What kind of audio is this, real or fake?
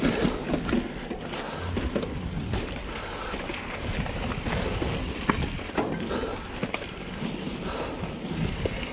real